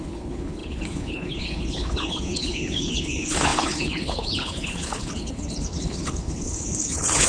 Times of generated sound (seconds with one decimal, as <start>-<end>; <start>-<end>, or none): 0.0-7.3